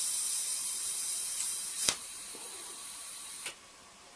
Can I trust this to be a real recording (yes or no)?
no